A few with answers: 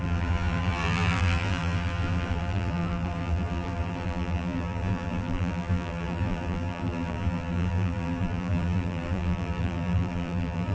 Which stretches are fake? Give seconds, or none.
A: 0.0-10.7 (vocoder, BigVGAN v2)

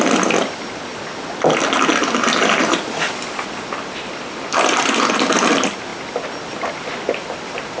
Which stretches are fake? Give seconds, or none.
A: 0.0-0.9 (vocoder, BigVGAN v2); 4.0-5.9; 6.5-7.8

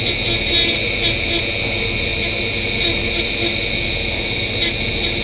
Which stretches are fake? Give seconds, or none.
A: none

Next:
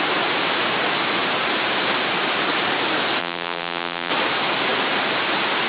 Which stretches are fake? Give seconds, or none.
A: 3.2-4.1 (vocoder, BigVGAN v2)

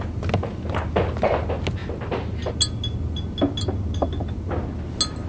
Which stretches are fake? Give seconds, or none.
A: none

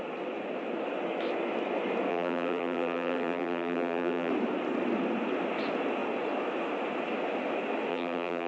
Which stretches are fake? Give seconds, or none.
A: 2.1-4.3 (vocoder, BigVGAN v2); 7.9-8.5

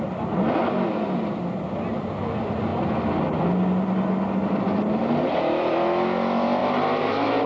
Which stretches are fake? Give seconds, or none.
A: 6.6-7.5 (vocoder, BigVGAN v2)

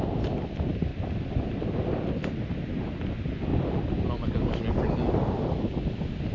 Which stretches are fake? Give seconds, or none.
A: none